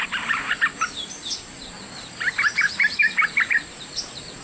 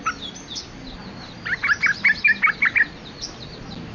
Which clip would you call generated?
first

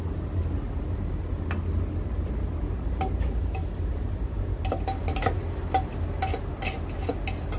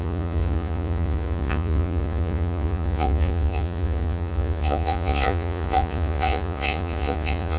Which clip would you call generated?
second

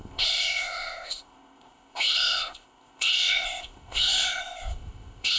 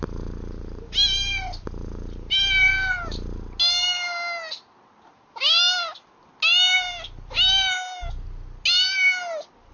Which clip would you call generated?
first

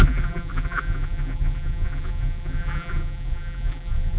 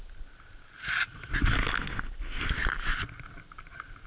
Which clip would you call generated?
first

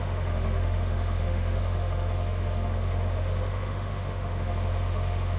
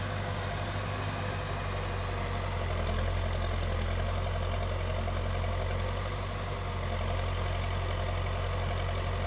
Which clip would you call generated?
first